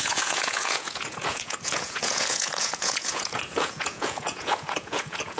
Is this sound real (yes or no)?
no